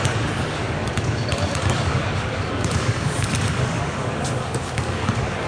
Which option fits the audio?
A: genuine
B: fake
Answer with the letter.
B